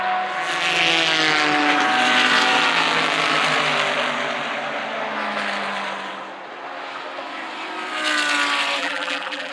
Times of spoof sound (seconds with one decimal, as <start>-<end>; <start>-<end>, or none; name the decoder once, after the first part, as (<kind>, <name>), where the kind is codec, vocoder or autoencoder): 8.8-9.5 (vocoder, BigVGAN v2)